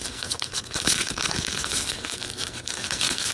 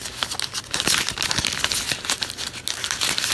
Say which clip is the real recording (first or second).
second